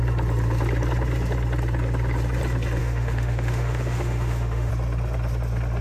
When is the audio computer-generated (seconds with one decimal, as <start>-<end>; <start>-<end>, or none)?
2.8-4.7